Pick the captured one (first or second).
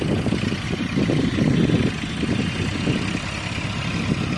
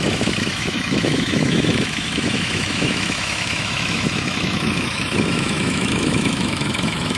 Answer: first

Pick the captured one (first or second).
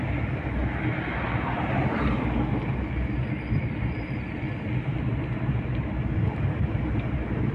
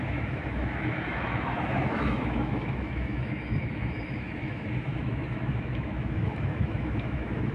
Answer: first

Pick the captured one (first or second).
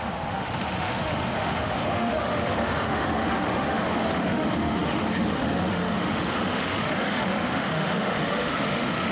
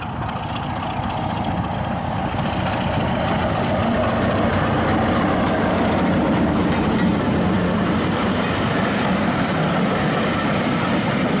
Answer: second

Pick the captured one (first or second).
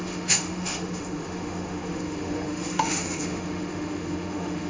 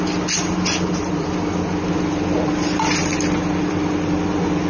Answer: second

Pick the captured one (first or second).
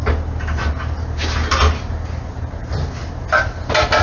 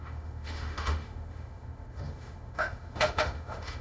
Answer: first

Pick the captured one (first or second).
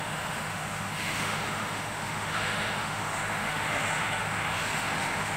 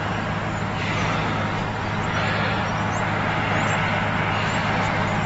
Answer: second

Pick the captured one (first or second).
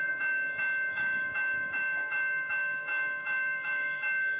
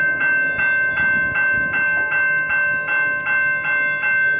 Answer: second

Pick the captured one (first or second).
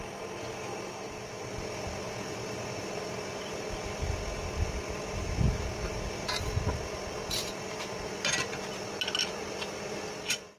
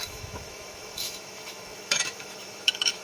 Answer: first